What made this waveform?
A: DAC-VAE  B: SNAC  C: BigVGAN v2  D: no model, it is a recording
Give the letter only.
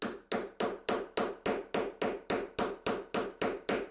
D